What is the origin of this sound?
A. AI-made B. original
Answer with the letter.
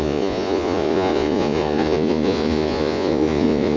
A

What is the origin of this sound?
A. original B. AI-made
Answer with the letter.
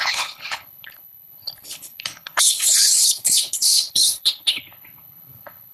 B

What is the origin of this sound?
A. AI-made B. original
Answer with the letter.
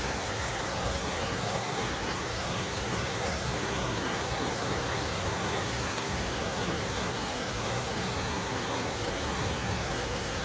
A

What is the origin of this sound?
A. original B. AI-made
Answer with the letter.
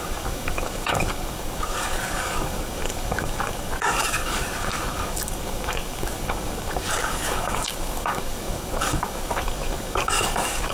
B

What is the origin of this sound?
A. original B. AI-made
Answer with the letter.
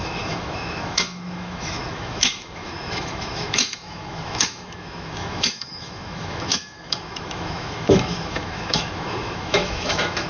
B